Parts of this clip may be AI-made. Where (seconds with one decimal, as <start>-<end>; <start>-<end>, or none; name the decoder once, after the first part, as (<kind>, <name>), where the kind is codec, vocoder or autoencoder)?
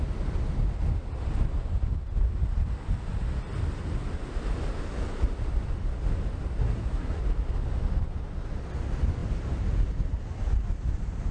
6.6-7.2 (codec, SNAC)